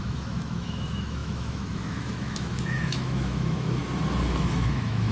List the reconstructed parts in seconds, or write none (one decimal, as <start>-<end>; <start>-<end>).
0.0-3.8; 4.4-5.1